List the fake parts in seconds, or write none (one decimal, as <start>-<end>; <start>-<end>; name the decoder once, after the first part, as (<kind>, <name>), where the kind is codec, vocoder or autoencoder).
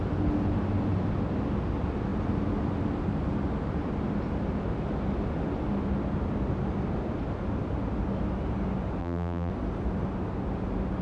9.0-9.5 (vocoder, BigVGAN v2)